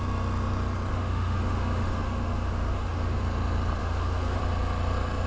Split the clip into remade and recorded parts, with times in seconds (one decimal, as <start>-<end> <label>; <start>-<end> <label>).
0.0-0.9 recorded; 0.9-3.2 remade; 3.2-3.8 recorded; 3.8-4.4 remade; 4.4-5.3 recorded

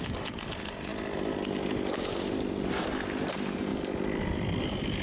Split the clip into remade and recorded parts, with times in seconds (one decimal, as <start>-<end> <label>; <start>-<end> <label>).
0.0-5.0 recorded

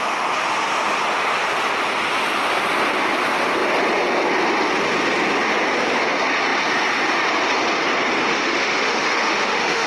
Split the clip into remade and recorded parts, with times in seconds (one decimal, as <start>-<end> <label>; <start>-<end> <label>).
0.0-8.3 recorded; 8.3-9.9 remade

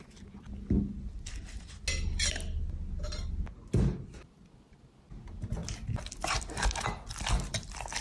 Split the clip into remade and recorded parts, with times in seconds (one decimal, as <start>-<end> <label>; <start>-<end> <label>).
0.0-8.0 recorded

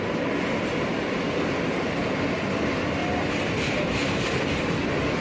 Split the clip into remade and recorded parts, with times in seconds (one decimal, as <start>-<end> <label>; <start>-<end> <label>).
0.0-5.2 recorded